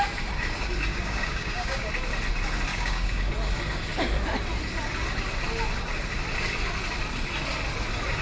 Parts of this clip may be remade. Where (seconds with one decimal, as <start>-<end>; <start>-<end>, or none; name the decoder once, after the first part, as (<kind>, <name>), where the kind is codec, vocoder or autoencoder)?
0.9-1.9 (codec, DAC); 2.7-3.3